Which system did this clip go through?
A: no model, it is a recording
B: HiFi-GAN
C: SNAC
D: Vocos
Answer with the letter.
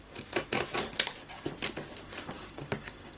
A